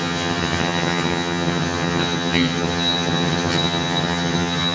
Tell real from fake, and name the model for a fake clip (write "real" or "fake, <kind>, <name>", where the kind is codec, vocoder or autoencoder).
fake, vocoder, HiFi-GAN